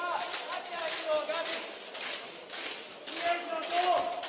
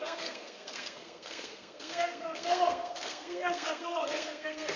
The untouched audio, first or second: first